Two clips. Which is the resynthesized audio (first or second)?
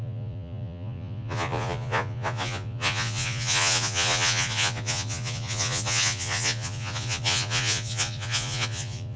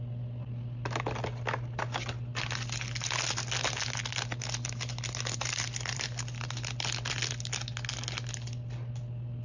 first